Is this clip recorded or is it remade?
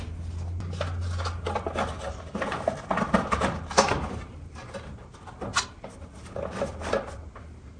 recorded